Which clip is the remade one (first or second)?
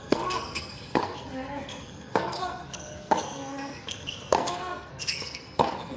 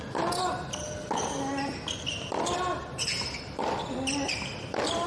first